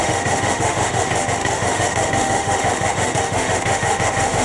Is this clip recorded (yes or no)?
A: no